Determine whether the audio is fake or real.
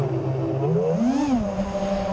real